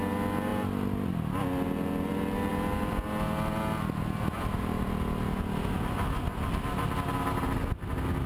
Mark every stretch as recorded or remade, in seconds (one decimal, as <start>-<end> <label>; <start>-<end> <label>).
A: 0.0-8.3 recorded